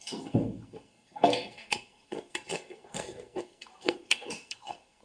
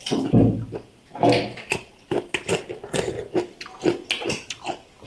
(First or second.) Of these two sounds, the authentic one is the second